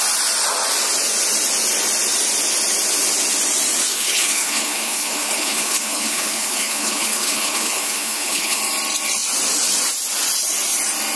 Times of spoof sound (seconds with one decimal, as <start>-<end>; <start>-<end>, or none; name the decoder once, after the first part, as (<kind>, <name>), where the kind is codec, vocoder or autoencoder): 3.9-8.6 (codec, HILCodec)